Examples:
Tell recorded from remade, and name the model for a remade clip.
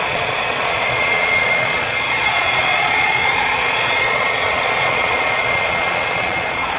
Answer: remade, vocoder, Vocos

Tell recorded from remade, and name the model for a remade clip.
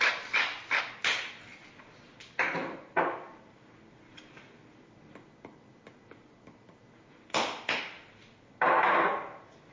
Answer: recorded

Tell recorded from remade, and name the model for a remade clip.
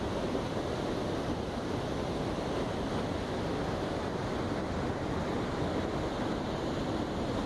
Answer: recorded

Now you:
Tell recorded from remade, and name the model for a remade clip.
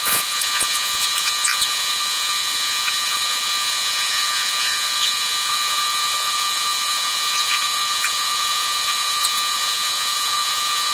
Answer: remade, vocoder, Vocos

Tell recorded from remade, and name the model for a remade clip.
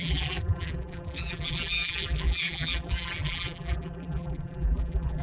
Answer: remade, vocoder, BigVGAN v2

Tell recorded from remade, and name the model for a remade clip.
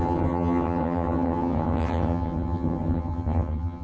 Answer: remade, vocoder, HiFi-GAN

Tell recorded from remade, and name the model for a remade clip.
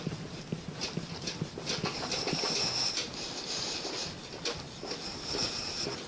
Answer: recorded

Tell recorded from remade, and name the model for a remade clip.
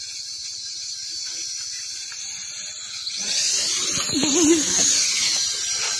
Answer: recorded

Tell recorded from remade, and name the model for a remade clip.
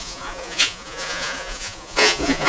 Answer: remade, vocoder, Vocos